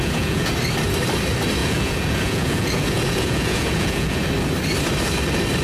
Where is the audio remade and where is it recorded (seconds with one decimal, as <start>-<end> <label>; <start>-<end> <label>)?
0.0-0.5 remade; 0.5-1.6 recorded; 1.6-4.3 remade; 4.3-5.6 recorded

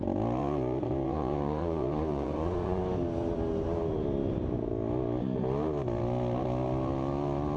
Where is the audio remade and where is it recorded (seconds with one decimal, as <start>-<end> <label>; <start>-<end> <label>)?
0.0-0.4 recorded; 0.4-2.8 remade; 2.8-7.6 recorded

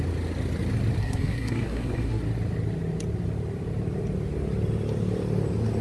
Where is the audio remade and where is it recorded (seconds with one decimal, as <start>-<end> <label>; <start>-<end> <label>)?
0.0-1.0 recorded; 1.0-2.2 remade; 2.2-5.8 recorded